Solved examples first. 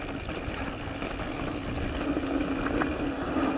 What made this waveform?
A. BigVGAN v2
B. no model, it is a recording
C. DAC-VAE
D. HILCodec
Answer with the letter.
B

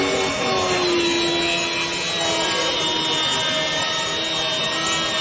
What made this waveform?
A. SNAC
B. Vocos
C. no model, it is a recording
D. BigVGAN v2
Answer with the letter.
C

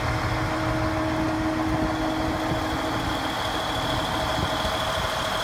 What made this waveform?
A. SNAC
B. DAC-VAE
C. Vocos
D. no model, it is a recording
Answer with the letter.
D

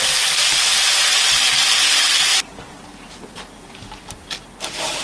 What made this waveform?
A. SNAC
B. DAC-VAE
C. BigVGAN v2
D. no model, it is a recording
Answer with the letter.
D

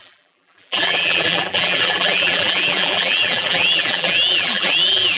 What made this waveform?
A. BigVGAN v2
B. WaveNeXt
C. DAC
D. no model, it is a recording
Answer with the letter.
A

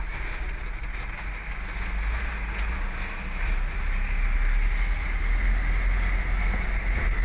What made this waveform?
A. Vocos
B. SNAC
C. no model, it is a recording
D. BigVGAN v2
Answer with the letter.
C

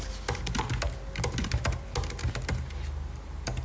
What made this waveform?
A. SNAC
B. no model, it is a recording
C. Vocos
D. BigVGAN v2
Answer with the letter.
B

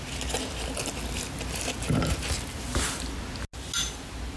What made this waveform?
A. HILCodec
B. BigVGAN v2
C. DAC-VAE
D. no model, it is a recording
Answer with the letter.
D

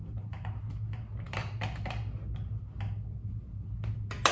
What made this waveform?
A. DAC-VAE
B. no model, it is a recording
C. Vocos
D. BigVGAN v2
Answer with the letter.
B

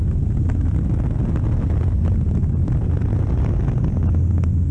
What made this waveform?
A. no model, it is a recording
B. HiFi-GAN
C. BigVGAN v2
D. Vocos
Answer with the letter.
A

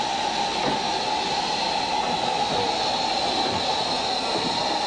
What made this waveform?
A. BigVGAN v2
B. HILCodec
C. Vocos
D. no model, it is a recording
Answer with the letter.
D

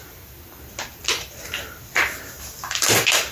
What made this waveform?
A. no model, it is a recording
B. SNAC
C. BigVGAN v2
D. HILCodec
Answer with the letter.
C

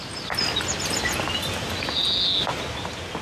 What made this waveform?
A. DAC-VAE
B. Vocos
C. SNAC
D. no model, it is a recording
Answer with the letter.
D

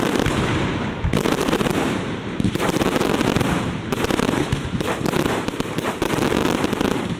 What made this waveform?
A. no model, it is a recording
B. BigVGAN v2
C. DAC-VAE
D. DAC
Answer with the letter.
B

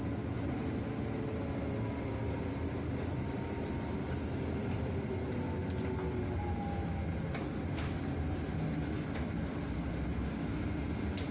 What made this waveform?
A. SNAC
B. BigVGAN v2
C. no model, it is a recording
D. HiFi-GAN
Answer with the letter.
C